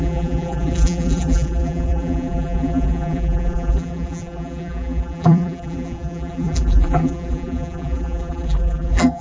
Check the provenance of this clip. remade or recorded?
remade